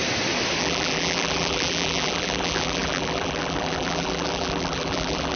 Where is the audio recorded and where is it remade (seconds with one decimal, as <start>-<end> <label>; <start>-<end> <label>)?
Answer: 0.0-0.6 recorded; 0.6-5.4 remade